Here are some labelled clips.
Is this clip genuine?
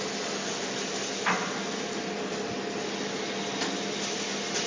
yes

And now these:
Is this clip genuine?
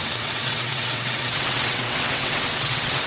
no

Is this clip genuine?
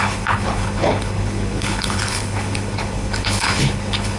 no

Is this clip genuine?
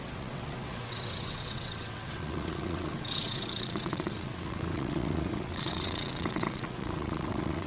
no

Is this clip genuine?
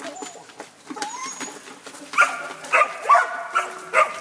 yes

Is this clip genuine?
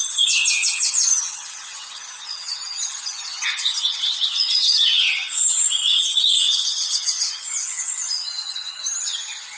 no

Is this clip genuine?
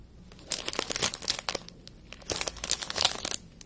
yes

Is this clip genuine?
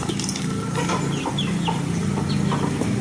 yes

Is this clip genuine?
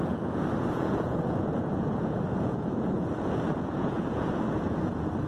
no